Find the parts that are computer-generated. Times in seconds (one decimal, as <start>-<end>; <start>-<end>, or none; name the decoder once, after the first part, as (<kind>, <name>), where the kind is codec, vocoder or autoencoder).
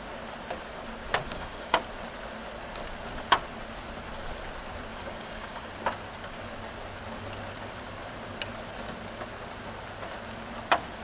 1.2-1.8 (codec, DAC); 4.9-5.7